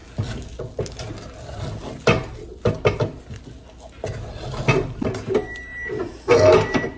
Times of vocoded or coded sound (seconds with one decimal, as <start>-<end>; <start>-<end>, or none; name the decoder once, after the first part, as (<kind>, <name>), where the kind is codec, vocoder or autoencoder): none